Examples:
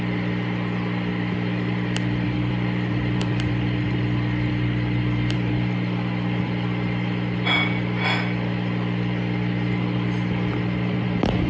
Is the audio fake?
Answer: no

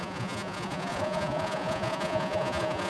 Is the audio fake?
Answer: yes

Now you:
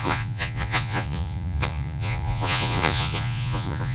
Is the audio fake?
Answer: yes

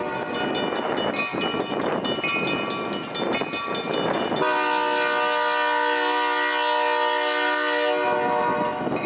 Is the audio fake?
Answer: no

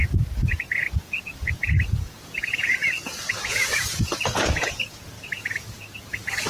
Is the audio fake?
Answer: yes